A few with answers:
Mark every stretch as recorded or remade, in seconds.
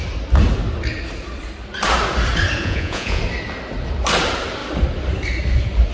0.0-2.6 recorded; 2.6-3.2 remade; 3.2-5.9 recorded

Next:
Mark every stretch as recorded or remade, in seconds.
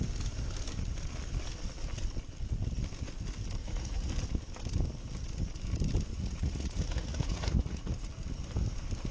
0.0-3.6 recorded; 3.6-4.1 remade; 4.1-6.1 recorded; 6.1-8.1 remade; 8.1-9.1 recorded